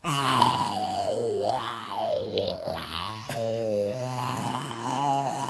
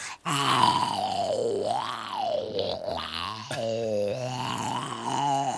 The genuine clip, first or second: second